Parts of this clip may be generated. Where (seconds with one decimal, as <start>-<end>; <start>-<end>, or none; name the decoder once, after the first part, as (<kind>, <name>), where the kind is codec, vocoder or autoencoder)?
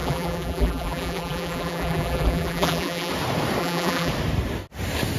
0.0-3.1 (vocoder, BigVGAN v2); 3.6-4.1